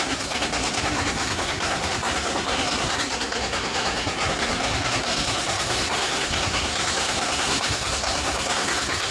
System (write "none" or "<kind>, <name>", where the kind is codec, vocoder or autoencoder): codec, SNAC